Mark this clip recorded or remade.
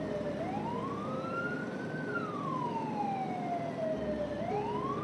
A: recorded